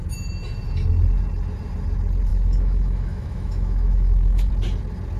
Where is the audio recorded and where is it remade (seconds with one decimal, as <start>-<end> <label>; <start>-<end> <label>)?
0.0-2.3 recorded; 2.3-4.5 remade; 4.5-5.2 recorded